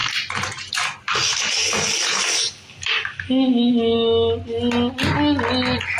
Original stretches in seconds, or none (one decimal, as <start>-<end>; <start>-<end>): 0.0-6.0